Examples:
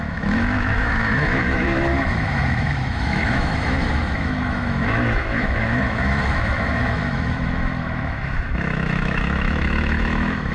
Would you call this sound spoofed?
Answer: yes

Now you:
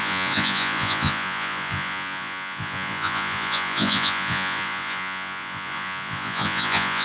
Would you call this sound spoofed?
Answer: yes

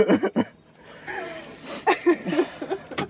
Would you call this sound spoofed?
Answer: yes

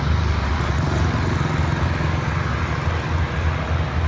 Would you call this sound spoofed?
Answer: no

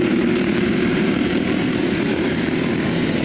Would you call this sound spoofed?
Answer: yes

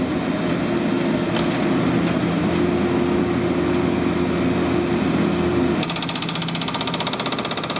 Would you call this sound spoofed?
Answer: no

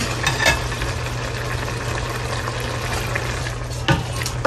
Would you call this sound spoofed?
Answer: no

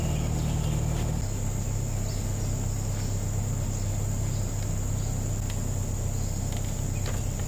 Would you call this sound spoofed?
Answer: no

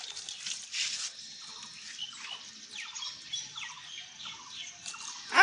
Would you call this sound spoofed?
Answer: no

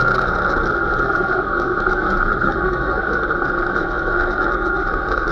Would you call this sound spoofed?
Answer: yes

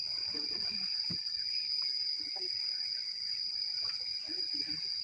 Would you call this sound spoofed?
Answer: no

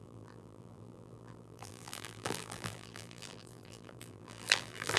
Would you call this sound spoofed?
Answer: yes